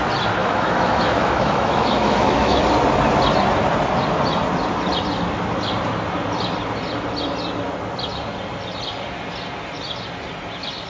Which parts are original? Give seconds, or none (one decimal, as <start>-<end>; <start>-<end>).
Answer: 0.0-0.4; 2.6-10.9